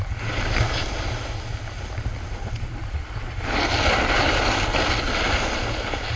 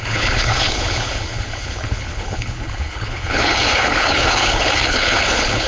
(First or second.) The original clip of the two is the first